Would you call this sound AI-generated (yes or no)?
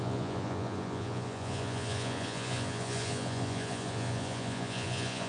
yes